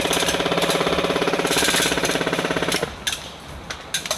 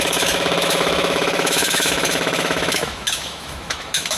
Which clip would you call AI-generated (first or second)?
second